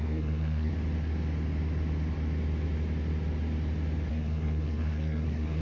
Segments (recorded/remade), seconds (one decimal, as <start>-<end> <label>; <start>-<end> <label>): 0.0-0.7 remade; 0.7-4.1 recorded; 4.1-5.6 remade